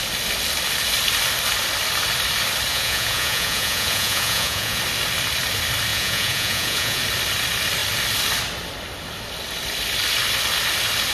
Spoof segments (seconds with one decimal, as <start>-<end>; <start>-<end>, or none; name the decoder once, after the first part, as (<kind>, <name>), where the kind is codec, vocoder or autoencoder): 2.7-4.8 (vocoder, Vocos); 5.9-7.0